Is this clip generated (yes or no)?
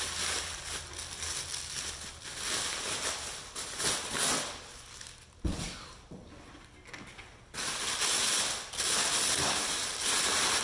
no